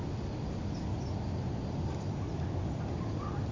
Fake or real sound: real